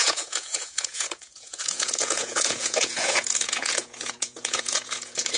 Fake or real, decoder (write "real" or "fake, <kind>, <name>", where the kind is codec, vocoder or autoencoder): fake, vocoder, Vocos